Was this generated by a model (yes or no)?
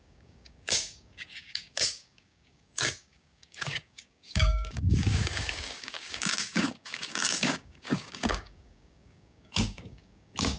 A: yes